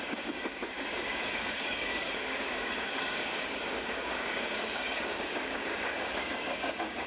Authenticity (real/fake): fake